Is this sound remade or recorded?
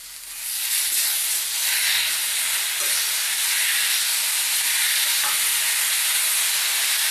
recorded